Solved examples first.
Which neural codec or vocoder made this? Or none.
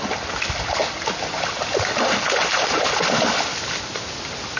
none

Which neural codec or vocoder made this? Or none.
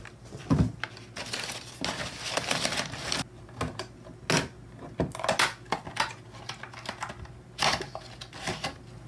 none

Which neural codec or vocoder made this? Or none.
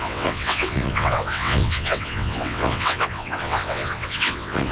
vocoder, WaveNeXt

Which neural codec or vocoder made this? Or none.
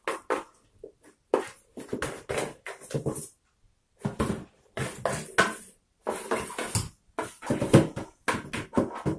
none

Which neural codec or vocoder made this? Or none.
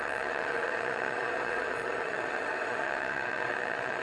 vocoder, WaveNeXt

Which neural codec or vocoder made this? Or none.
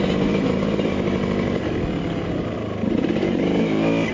none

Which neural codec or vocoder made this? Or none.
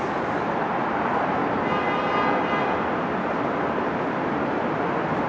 none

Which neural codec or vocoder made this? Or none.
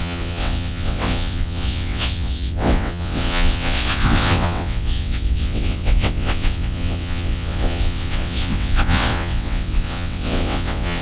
vocoder, WaveNeXt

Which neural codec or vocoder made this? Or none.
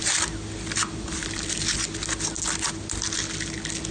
none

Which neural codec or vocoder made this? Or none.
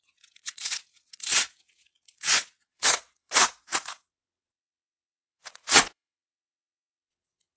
vocoder, WaveNeXt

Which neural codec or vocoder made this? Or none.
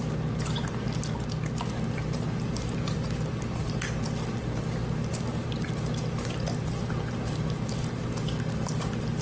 none